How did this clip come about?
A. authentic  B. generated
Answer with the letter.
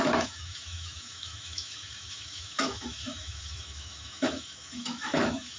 B